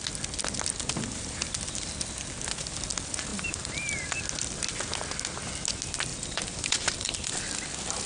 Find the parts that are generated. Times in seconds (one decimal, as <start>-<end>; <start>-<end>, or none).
3.3-4.2; 6.1-7.4